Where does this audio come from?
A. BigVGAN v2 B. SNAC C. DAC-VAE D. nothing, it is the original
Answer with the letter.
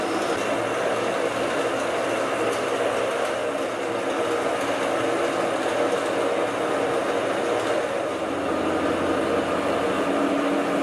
D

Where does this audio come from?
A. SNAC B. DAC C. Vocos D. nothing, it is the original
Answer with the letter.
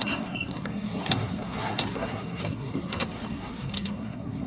A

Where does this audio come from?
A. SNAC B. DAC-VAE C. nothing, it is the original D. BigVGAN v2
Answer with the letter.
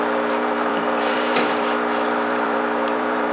D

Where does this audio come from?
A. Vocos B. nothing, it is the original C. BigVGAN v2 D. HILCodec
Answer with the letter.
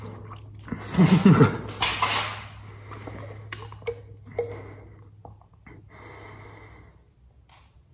B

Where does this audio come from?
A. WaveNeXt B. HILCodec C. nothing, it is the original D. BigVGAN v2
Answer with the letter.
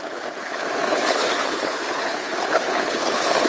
B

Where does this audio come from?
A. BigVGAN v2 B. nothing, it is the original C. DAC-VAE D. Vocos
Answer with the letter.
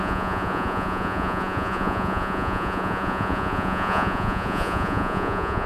D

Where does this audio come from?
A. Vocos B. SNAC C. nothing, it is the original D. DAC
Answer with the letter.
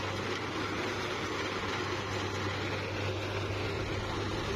C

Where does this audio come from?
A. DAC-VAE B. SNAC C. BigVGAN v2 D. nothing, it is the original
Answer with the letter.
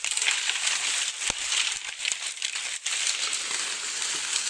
D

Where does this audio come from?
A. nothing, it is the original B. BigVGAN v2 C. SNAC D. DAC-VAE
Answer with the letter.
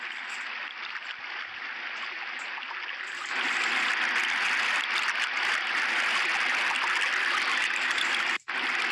A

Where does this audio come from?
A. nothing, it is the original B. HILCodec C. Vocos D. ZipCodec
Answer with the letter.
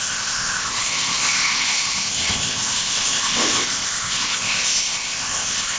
D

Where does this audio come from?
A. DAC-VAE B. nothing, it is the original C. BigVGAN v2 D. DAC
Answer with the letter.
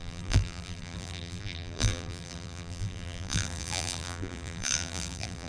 C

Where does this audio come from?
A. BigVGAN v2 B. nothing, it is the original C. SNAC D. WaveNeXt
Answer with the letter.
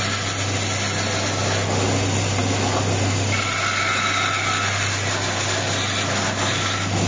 B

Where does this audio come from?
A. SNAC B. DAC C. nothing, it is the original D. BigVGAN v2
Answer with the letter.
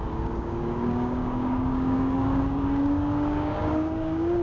B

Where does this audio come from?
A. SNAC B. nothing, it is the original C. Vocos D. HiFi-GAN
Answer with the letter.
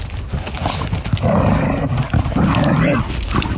B